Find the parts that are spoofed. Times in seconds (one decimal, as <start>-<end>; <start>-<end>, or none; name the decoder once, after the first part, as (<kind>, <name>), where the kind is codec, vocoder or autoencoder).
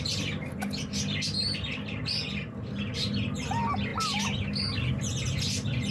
none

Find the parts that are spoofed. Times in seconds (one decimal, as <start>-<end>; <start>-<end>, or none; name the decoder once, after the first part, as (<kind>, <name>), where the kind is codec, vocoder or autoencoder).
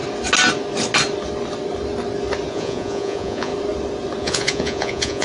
2.5-3.5 (vocoder, Vocos); 4.2-5.2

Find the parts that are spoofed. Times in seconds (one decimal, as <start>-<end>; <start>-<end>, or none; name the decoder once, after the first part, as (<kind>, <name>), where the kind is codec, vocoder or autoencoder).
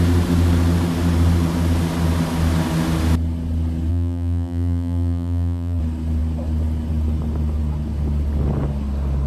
3.9-5.8 (vocoder, BigVGAN v2)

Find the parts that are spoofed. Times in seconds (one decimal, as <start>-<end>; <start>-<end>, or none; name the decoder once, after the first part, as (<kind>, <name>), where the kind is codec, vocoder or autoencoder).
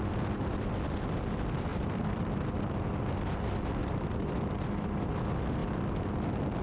1.7-2.6 (vocoder, BigVGAN v2); 3.8-5.0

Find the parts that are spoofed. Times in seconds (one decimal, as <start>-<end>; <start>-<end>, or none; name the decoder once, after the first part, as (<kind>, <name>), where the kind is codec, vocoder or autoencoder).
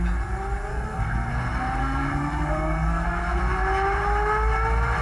0.7-1.3 (codec, SNAC); 1.8-3.4